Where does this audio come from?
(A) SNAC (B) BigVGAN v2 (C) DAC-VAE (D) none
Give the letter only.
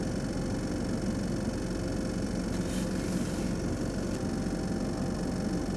D